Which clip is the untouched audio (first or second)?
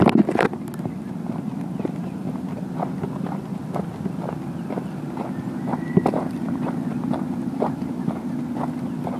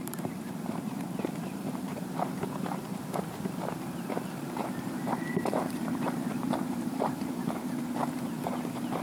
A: first